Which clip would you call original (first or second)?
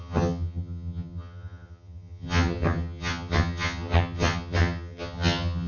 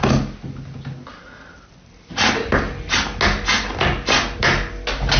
second